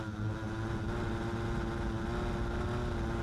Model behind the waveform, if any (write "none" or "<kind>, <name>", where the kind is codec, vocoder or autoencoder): none